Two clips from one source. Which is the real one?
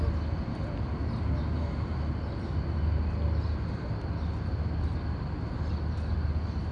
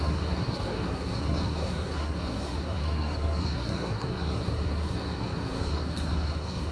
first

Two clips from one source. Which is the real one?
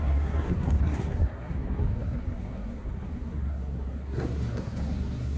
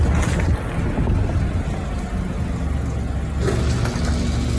second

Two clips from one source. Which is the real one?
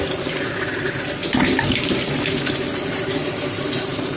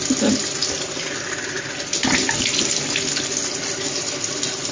second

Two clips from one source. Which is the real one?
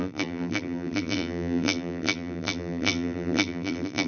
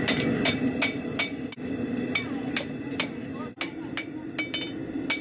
second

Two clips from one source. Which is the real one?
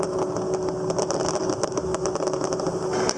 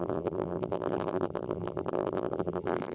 first